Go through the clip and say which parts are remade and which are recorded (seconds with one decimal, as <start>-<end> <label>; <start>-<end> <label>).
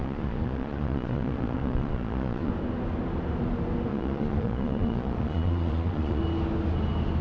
0.0-2.5 remade; 2.5-3.9 recorded; 3.9-6.2 remade; 6.2-7.2 recorded